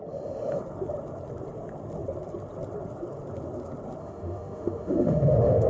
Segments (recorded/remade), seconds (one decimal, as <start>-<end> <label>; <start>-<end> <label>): 0.0-4.0 recorded; 4.0-5.7 remade